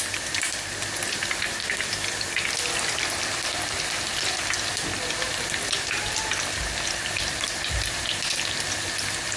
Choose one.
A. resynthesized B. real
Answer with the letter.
A